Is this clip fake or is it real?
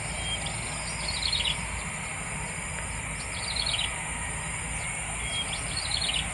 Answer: real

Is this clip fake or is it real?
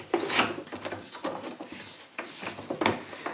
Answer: real